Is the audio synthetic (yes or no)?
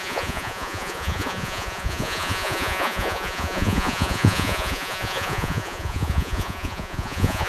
yes